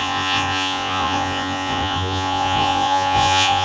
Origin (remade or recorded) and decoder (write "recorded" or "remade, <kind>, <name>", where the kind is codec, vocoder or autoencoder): remade, vocoder, Vocos